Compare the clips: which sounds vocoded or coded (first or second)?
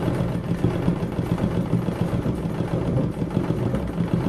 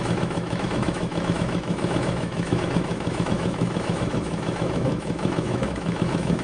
second